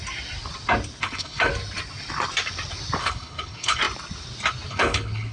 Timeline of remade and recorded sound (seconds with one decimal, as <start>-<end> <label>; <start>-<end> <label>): 0.0-1.0 recorded; 1.0-1.5 remade; 1.5-3.0 recorded; 3.0-3.8 remade; 3.8-4.7 recorded; 4.7-5.3 remade